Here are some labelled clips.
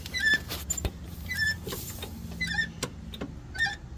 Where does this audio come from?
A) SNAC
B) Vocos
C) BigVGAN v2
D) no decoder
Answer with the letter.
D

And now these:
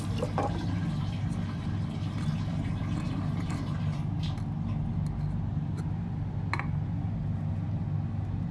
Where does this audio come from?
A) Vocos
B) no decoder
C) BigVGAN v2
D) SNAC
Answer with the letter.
B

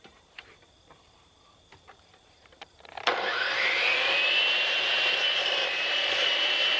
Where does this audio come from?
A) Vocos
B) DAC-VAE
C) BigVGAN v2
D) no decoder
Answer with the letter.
C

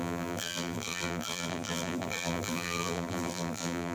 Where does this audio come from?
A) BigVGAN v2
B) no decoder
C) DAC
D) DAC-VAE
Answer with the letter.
A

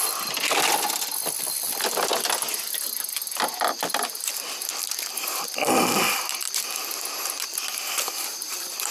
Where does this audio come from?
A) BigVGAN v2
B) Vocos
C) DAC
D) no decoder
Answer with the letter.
A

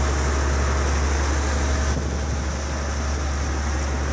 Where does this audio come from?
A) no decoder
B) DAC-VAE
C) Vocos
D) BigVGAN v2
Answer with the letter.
A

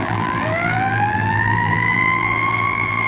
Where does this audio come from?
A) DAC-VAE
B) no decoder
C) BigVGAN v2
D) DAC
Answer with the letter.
C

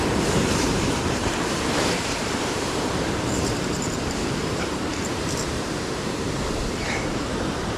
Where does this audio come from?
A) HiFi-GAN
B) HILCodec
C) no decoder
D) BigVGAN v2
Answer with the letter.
D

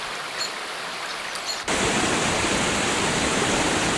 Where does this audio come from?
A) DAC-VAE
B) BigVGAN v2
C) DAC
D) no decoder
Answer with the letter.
D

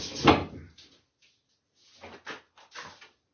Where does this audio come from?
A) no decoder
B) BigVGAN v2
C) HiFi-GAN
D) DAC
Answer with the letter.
A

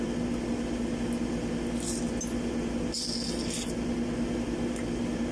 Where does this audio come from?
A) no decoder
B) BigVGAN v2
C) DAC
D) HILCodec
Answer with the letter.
A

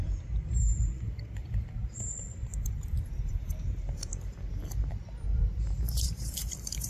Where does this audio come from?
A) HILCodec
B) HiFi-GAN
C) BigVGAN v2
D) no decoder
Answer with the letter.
C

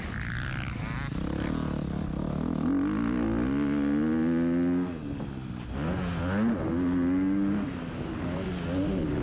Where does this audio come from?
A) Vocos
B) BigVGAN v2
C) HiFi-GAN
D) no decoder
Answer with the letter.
D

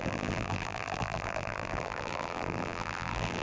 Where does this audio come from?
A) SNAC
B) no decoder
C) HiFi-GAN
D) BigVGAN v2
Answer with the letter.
D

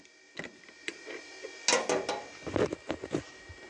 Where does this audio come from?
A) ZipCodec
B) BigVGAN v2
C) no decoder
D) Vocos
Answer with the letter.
C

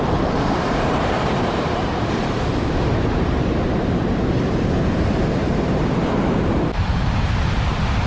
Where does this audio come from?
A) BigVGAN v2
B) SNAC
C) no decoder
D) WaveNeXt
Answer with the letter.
A